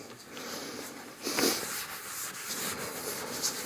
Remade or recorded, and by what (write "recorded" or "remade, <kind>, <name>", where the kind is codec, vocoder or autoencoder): recorded